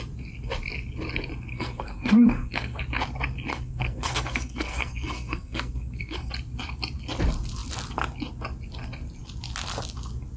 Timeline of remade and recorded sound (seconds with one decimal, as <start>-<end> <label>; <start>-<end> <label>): 0.0-1.5 recorded; 1.5-2.8 remade; 2.8-3.5 recorded; 3.5-6.3 remade; 6.3-10.4 recorded